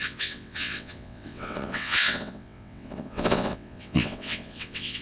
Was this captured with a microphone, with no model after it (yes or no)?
no